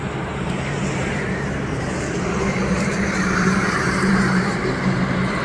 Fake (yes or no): yes